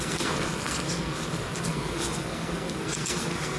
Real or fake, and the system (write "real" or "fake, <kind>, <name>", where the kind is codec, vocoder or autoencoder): fake, codec, SNAC